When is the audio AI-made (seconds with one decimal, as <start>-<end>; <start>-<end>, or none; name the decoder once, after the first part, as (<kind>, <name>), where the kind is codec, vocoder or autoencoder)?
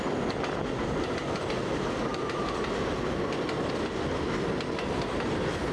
none